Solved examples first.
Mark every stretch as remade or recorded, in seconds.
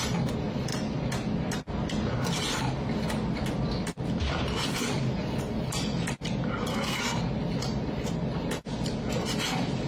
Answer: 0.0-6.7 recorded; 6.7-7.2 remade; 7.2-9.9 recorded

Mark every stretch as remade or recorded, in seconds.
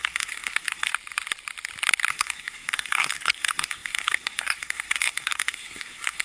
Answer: 0.0-0.9 remade; 0.9-2.1 recorded; 2.1-6.2 remade